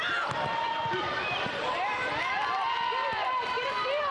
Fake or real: fake